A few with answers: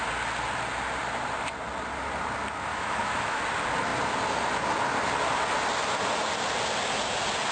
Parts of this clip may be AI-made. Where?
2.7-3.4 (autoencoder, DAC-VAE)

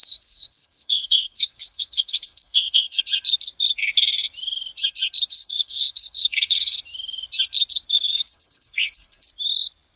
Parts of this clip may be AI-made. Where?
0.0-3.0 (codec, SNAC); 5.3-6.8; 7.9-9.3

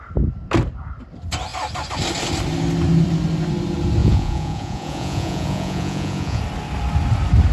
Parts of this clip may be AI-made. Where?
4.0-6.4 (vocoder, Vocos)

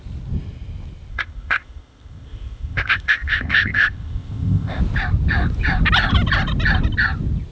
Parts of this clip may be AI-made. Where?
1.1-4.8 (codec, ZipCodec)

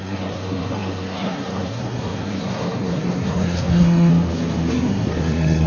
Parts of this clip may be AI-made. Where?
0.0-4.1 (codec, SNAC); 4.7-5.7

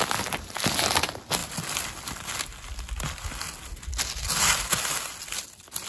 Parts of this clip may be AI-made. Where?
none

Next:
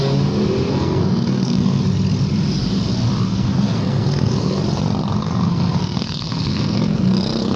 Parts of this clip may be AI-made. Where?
0.7-1.8 (codec, SNAC); 3.3-4.6; 5.2-7.6

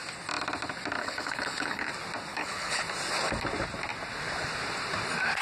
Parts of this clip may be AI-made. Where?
1.0-1.9 (codec, HILCodec); 2.3-2.8